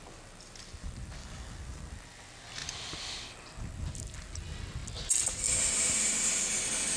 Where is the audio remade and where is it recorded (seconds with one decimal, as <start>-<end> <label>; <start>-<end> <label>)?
0.0-1.2 recorded; 1.2-1.7 remade; 1.7-7.0 recorded